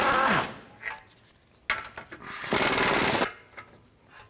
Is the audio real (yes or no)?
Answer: yes